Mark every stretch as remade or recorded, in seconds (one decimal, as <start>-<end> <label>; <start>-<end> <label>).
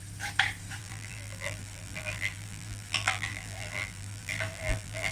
0.0-0.8 recorded; 0.8-5.1 remade